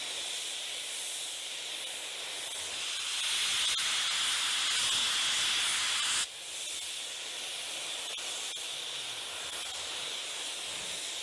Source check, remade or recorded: recorded